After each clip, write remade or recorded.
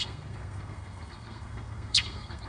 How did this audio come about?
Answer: remade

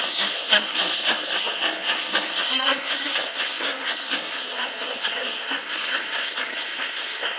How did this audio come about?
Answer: remade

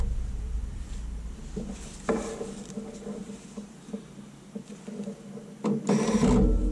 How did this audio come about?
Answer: recorded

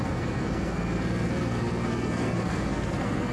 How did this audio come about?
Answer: remade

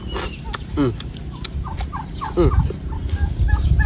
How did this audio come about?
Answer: recorded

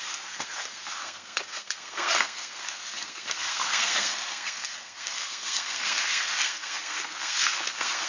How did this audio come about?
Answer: remade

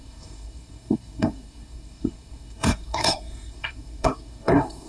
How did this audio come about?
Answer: remade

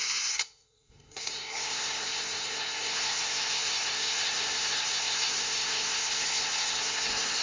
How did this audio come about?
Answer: remade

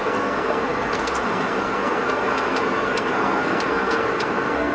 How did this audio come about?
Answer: remade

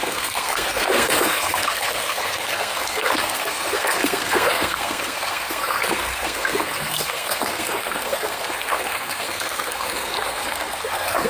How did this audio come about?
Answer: remade